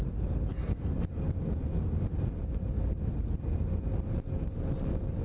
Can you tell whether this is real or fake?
real